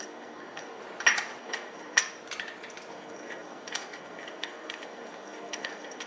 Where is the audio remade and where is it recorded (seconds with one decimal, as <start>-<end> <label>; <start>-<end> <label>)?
0.0-0.8 remade; 0.8-1.4 recorded; 1.4-2.0 remade; 2.0-2.9 recorded; 2.9-6.1 remade